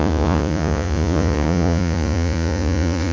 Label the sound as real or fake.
fake